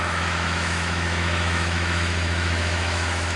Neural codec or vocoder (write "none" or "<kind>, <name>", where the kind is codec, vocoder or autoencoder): autoencoder, DAC-VAE